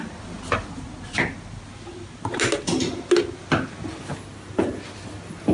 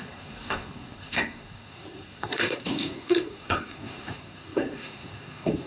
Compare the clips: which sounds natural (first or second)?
first